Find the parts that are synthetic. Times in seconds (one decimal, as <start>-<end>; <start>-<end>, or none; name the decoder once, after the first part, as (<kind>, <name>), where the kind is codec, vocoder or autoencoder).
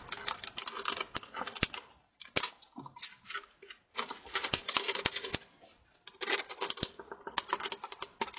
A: none